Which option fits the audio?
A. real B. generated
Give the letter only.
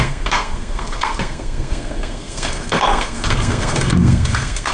B